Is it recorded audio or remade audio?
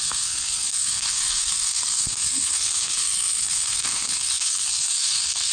remade